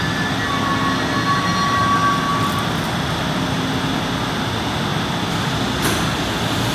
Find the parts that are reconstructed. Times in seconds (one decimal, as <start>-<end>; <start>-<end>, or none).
2.3-3.9; 4.9-5.5